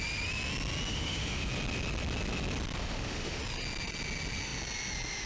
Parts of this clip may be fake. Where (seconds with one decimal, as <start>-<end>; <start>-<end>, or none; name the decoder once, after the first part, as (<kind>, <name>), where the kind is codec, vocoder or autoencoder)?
0.9-1.5 (autoencoder, DAC-VAE); 2.8-3.4